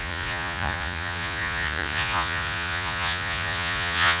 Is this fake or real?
fake